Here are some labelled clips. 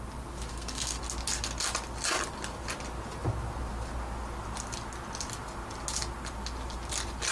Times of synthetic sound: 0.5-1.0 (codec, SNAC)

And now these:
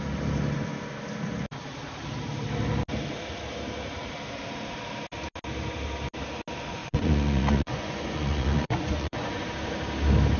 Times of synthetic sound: 6.8-9.4 (vocoder, Vocos)

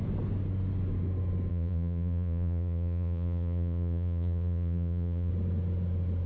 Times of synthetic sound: 1.5-5.3 (vocoder, Vocos)

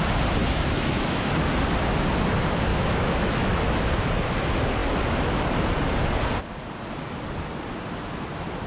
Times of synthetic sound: 0.4-1.3 (autoencoder, DAC-VAE); 2.7-3.9